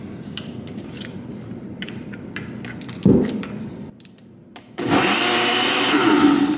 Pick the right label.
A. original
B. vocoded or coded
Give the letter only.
B